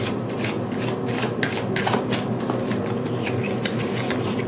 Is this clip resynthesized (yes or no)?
no